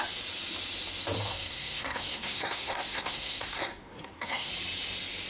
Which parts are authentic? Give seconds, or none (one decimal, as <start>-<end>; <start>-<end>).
0.0-1.3; 4.5-5.3